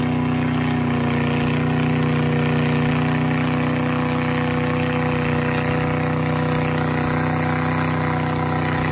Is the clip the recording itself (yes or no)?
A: yes